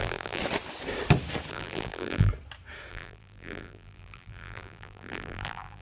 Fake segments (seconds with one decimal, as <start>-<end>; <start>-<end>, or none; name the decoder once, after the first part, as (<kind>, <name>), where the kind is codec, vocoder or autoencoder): 0.0-0.4 (vocoder, BigVGAN v2); 1.5-2.3; 2.9-5.8